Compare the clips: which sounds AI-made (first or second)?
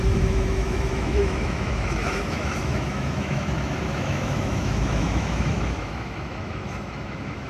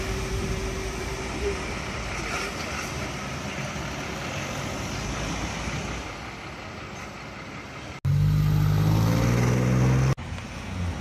first